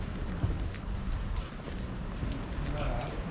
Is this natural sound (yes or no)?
yes